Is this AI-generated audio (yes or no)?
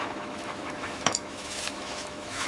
yes